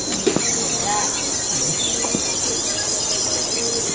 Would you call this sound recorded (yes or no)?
yes